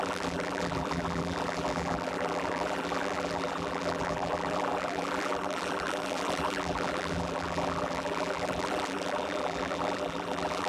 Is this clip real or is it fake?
fake